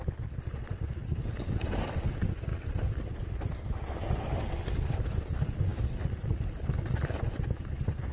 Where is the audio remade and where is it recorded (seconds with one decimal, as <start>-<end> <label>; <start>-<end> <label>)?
0.0-8.1 recorded